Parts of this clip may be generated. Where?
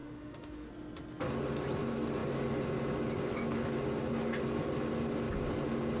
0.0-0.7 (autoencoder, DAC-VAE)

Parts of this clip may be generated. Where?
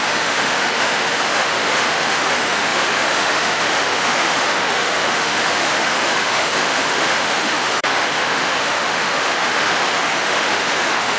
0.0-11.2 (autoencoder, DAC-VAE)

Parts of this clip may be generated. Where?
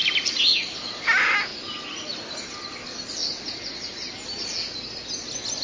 none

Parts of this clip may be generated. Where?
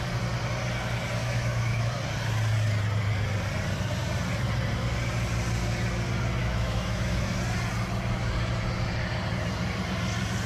1.2-1.9 (autoencoder, DAC-VAE); 6.4-7.3